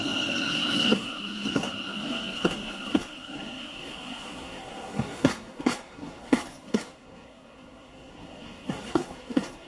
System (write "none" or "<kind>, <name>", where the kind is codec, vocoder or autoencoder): codec, SNAC